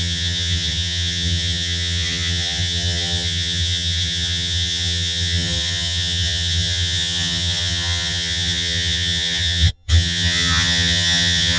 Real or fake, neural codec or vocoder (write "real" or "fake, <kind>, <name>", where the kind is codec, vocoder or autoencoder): fake, vocoder, HiFi-GAN